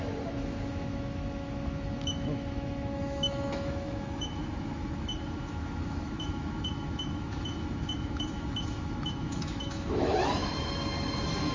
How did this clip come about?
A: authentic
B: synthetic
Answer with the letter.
B